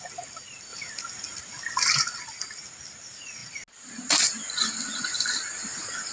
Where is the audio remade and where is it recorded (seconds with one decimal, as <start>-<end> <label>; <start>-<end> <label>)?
0.0-6.1 recorded